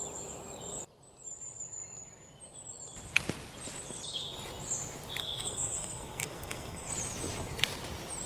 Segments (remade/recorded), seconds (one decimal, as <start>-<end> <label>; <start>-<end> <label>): 0.0-5.2 recorded; 5.2-6.9 remade; 6.9-8.3 recorded